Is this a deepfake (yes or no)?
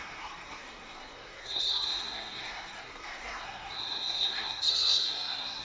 yes